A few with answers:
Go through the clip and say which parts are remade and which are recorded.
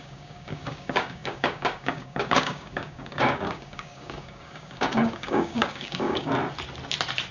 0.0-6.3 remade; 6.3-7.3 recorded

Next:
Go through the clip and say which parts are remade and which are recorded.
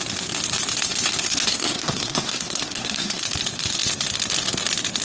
0.0-1.2 recorded; 1.2-3.2 remade; 3.2-5.0 recorded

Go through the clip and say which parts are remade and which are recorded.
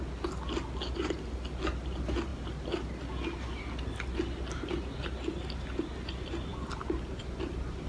0.0-7.9 recorded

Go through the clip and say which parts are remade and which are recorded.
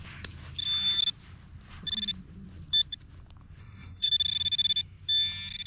0.0-3.6 recorded; 3.6-4.1 remade; 4.1-5.7 recorded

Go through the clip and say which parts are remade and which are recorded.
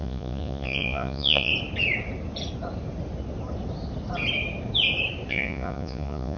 0.0-1.5 remade; 1.5-5.3 recorded; 5.3-6.4 remade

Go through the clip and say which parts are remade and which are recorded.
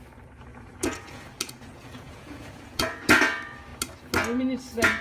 0.0-0.5 recorded; 0.5-3.2 remade; 3.2-5.0 recorded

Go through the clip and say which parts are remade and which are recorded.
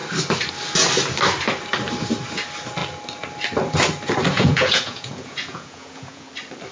0.0-4.3 recorded; 4.3-6.3 remade; 6.3-6.7 recorded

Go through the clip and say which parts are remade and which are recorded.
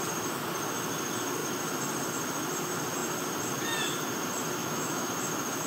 0.0-4.6 recorded; 4.6-5.1 remade; 5.1-5.7 recorded